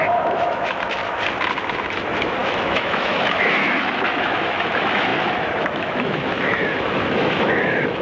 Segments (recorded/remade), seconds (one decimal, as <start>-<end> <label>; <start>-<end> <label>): 0.0-1.0 remade; 1.0-1.8 recorded; 1.8-8.0 remade

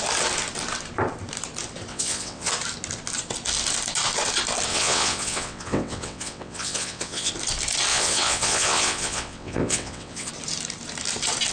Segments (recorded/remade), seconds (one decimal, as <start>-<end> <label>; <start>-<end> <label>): 0.0-1.9 recorded; 1.9-2.5 remade; 2.5-4.7 recorded; 4.7-7.3 remade; 7.3-7.9 recorded; 7.9-10.3 remade; 10.3-11.5 recorded

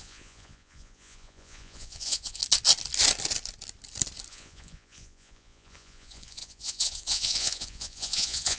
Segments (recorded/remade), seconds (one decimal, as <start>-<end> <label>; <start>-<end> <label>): 0.0-2.4 remade; 2.4-4.3 recorded; 4.3-8.6 remade